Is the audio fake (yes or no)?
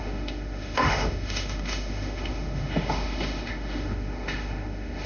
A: yes